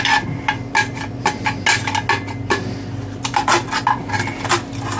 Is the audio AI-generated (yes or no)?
no